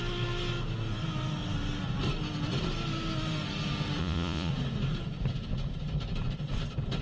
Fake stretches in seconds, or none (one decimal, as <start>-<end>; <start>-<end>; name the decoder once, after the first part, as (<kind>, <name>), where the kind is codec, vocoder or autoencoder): 4.0-4.5 (vocoder, Vocos)